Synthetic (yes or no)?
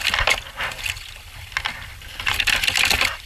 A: no